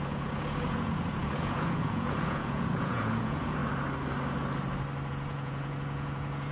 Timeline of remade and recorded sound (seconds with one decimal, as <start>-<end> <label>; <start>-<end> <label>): 0.0-3.6 remade; 3.6-5.1 recorded; 5.1-6.5 remade